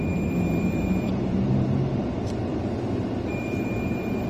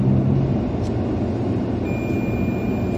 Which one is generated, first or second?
first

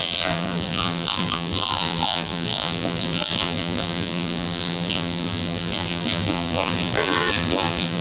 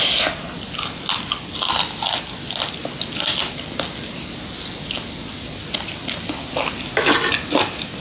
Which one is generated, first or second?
first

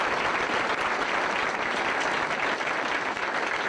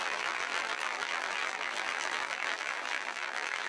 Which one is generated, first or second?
second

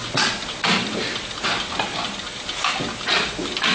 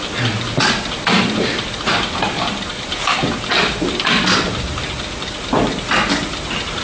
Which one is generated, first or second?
second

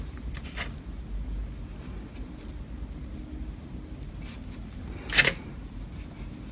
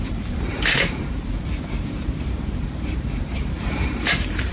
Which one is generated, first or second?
second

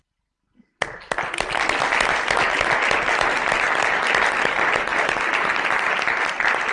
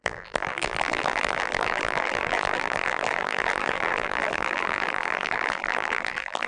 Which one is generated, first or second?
second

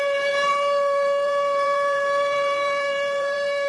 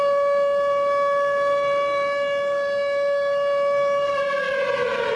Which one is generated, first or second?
first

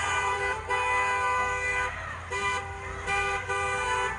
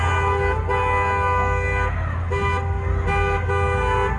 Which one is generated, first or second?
first